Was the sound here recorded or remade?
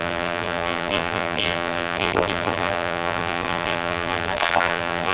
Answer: remade